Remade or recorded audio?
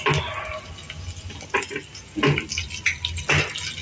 recorded